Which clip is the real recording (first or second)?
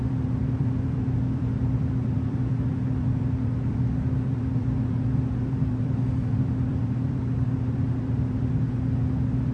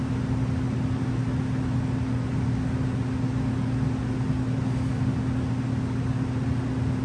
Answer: second